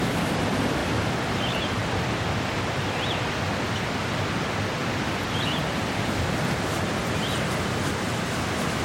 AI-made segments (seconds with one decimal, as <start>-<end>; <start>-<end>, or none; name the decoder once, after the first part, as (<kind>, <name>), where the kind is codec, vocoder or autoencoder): 0.8-2.2 (vocoder, BigVGAN v2)